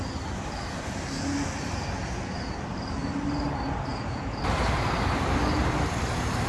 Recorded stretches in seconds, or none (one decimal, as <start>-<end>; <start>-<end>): 0.0-3.9; 4.4-6.5